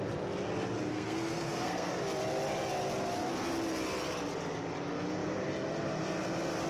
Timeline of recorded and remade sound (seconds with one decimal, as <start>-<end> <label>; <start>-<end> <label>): 0.0-0.9 recorded; 0.9-1.9 remade; 1.9-6.7 recorded